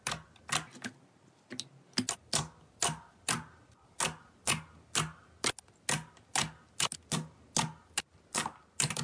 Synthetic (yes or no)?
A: no